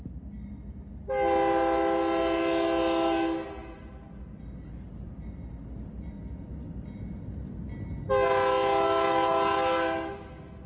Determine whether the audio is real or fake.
real